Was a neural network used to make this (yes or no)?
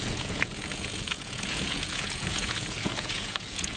yes